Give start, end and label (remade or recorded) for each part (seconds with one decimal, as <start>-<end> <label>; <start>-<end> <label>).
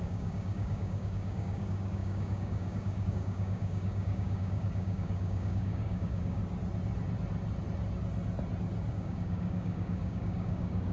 0.0-6.4 remade; 6.4-8.9 recorded; 8.9-10.9 remade